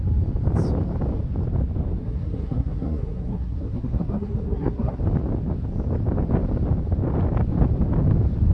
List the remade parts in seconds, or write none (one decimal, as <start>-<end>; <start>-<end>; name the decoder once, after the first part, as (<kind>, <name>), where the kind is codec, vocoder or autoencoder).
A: 2.0-5.0 (codec, SNAC)